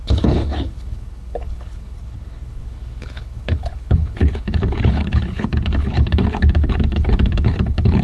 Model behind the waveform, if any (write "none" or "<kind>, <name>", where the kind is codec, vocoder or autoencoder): codec, HILCodec